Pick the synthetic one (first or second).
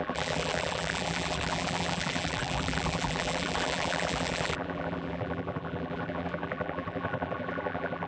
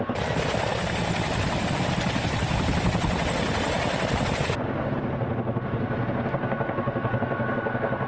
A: first